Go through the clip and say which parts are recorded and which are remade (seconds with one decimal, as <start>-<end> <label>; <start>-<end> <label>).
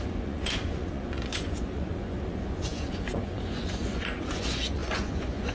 0.0-5.5 remade